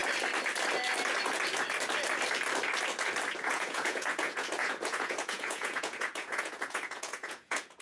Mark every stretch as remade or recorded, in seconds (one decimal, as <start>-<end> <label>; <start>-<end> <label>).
0.0-3.4 recorded; 3.4-7.8 remade